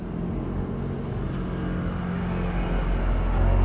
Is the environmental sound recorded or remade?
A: recorded